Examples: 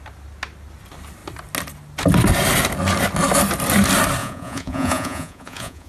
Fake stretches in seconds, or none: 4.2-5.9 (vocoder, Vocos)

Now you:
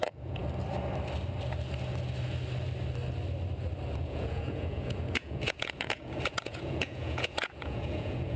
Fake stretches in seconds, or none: 0.0-0.4 (vocoder, Vocos); 4.0-8.4